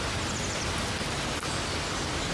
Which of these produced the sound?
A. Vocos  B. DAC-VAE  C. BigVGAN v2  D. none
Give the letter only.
D